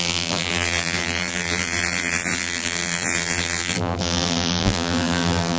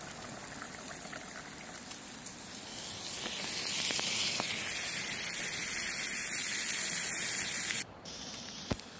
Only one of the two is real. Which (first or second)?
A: second